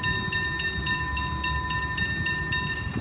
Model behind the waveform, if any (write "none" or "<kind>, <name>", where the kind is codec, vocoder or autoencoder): none